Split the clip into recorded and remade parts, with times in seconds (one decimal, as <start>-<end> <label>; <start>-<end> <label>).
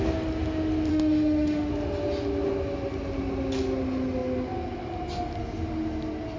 0.0-0.9 recorded; 0.9-1.7 remade; 1.7-6.4 recorded